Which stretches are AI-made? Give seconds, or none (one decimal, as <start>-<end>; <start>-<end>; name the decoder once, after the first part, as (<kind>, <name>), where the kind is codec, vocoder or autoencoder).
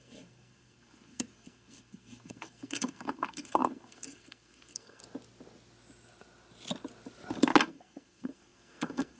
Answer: 0.0-5.0 (codec, SNAC); 7.6-9.2